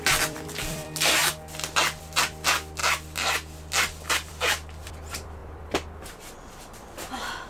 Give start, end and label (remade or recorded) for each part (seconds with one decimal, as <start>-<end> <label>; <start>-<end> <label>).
0.0-1.2 remade; 1.2-2.0 recorded; 2.0-2.8 remade; 2.8-4.3 recorded; 4.3-7.5 remade